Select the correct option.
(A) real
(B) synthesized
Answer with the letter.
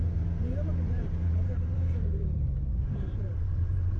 B